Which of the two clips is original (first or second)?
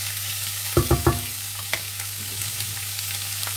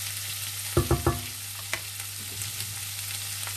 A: second